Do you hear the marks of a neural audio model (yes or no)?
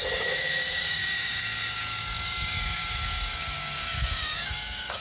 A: yes